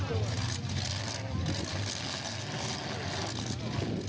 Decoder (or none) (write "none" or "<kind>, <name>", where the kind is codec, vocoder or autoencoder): none